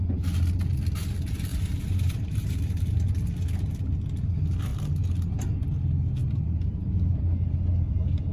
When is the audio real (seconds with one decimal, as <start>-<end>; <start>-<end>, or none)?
0.0-1.5; 3.3-6.2; 7.1-8.3